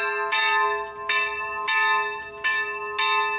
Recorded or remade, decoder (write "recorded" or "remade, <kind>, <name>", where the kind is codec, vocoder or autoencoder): recorded